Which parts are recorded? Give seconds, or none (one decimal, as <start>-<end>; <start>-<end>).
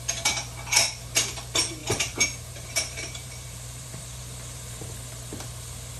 0.0-1.8; 4.7-6.0